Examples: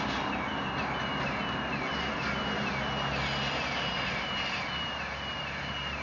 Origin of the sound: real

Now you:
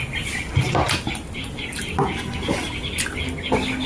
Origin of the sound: real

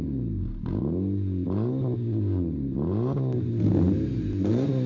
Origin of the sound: real